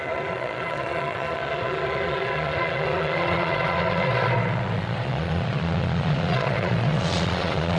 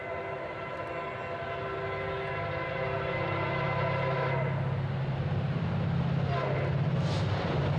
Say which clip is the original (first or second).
second